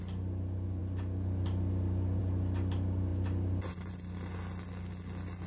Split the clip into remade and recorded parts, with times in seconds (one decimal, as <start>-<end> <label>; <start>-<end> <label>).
0.0-5.5 recorded